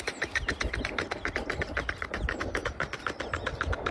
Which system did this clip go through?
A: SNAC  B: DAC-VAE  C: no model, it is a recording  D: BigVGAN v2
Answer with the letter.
C